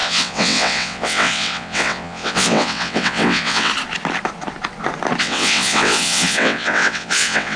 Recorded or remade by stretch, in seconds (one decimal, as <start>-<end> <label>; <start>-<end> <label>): 0.0-3.7 remade; 3.7-5.2 recorded; 5.2-7.6 remade

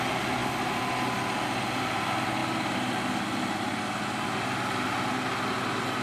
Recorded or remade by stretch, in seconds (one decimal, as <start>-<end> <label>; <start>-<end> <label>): 0.0-6.0 recorded

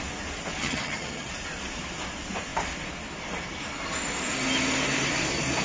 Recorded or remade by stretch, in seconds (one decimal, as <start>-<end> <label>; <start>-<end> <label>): 0.0-0.6 recorded; 0.6-1.3 remade; 1.3-5.6 recorded

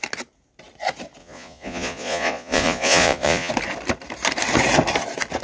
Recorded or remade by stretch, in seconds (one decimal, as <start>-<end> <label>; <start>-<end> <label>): 0.0-1.2 recorded; 1.2-3.5 remade; 3.5-5.4 recorded